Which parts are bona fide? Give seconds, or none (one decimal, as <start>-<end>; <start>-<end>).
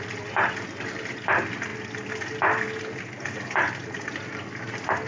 0.0-5.1